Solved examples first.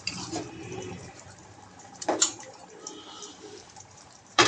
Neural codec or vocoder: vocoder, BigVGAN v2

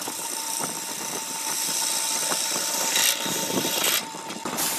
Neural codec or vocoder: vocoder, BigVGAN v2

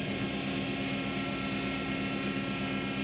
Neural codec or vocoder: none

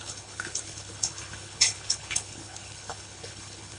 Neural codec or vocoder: codec, HILCodec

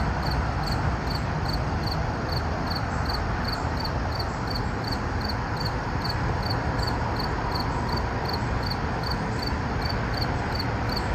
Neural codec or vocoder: none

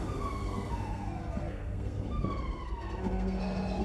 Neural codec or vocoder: codec, SNAC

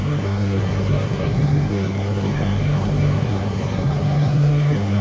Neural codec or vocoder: codec, SNAC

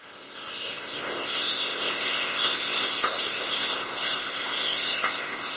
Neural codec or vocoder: codec, ZipCodec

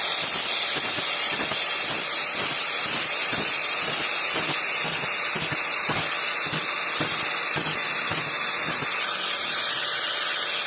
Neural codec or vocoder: none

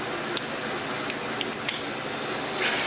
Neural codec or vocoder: none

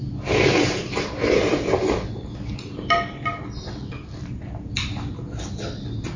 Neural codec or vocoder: none